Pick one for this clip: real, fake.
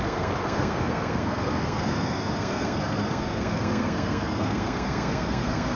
fake